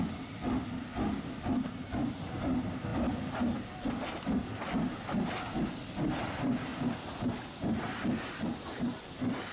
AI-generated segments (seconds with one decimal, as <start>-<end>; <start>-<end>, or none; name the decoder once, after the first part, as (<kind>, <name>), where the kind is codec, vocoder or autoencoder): none